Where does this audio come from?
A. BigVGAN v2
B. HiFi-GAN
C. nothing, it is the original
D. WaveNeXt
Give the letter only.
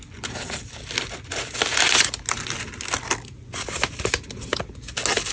C